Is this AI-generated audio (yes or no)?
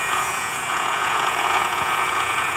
yes